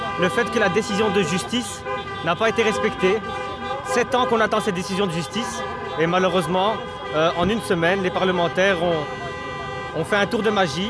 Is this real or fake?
real